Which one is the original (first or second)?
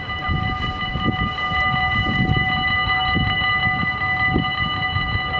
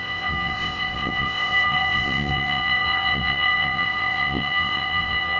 first